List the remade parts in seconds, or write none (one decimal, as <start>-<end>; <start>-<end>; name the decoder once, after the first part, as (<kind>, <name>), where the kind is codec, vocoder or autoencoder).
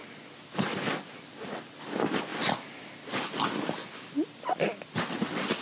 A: none